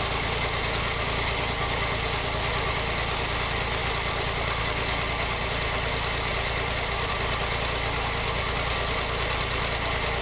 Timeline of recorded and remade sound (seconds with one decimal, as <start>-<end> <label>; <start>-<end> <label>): 0.0-3.8 recorded; 3.8-4.6 remade; 4.6-6.3 recorded; 6.3-7.1 remade; 7.1-10.2 recorded